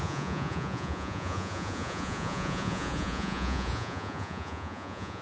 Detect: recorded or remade remade